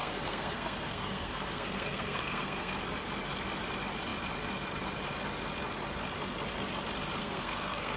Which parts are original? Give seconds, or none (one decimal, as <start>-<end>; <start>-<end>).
2.8-7.2